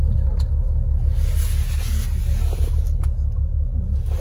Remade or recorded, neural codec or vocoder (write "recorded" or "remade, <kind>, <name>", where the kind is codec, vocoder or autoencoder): recorded